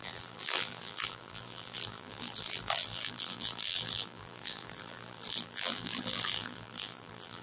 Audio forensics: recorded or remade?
remade